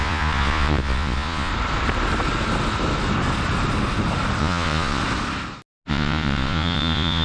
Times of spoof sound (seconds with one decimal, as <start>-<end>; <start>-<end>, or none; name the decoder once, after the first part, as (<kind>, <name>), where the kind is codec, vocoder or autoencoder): 0.0-1.5 (vocoder, Vocos); 4.4-5.0; 5.9-7.2